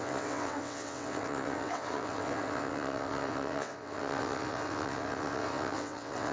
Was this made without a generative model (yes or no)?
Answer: no